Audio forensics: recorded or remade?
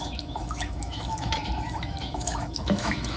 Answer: remade